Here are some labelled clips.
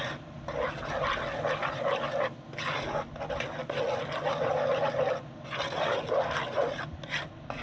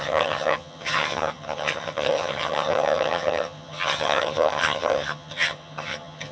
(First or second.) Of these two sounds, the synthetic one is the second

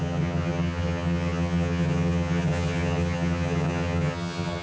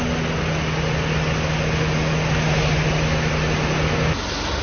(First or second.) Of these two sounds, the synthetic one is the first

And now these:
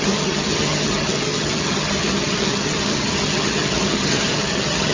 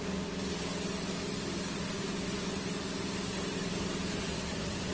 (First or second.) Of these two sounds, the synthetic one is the first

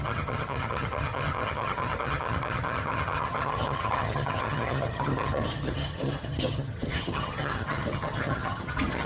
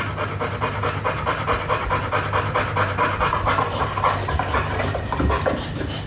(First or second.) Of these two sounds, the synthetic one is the first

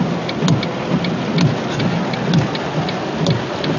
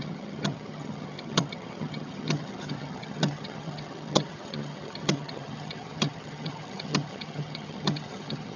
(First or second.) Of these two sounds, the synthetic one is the second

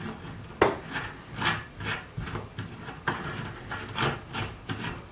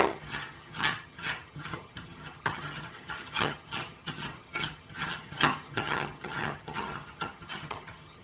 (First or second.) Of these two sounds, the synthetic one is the second